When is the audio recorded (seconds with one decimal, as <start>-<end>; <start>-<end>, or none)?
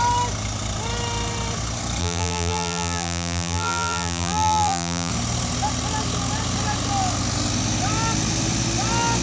0.0-2.0; 5.1-9.2